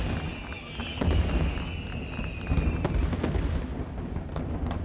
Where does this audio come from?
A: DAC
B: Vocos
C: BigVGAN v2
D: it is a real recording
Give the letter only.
D